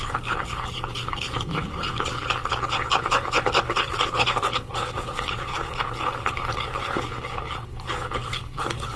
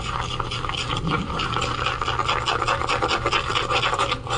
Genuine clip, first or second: second